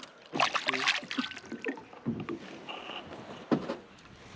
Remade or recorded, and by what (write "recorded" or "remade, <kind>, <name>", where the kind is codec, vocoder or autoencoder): recorded